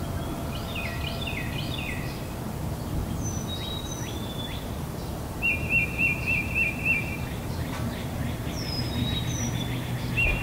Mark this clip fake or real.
real